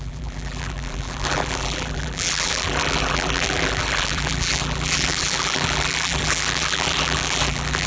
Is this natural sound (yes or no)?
no